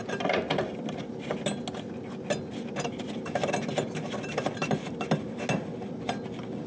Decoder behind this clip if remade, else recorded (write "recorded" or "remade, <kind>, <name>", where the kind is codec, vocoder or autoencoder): recorded